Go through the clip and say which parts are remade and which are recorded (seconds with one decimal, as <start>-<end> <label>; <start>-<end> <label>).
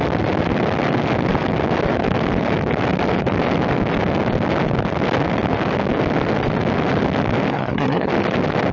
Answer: 0.0-7.5 recorded; 7.5-8.1 remade; 8.1-8.7 recorded